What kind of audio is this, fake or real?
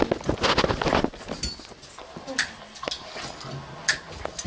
real